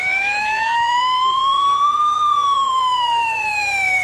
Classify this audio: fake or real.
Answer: fake